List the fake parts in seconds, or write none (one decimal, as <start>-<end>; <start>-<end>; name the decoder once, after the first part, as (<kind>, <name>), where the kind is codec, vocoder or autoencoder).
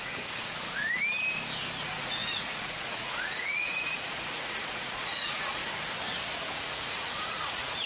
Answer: 0.0-0.5 (vocoder, Vocos); 1.8-5.6; 6.4-7.9